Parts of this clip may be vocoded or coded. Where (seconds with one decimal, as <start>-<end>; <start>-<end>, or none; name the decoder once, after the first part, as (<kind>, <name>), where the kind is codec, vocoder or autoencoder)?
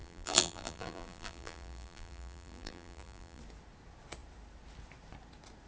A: 0.0-3.4 (vocoder, BigVGAN v2)